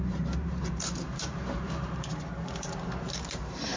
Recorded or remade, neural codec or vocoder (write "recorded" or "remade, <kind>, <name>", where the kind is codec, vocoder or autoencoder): remade, vocoder, BigVGAN v2